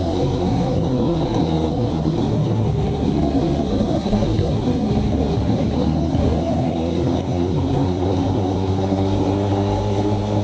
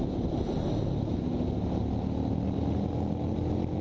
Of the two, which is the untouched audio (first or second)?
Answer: second